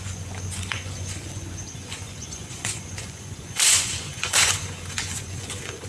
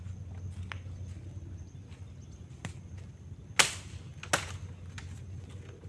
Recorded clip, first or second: second